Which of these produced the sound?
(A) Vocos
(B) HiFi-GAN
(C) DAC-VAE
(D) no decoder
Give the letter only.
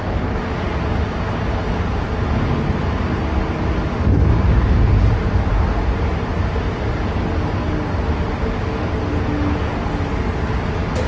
D